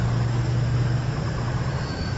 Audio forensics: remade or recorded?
recorded